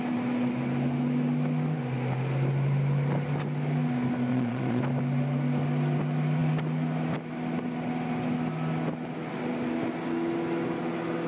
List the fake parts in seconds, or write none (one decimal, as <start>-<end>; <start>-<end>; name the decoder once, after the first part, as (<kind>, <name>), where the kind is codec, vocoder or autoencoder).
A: 4.3-4.8 (vocoder, Vocos)